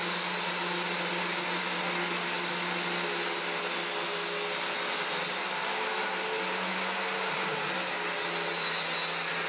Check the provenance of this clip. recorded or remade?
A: recorded